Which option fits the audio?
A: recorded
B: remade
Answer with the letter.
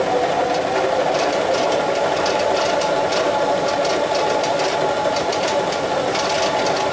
A